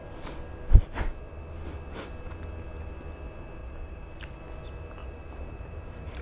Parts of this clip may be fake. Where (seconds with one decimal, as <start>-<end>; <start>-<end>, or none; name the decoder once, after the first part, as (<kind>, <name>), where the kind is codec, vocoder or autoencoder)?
3.6-4.4 (vocoder, BigVGAN v2); 5.0-6.2